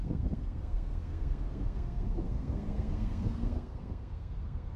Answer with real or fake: fake